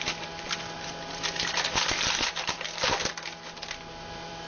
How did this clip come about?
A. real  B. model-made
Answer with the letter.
B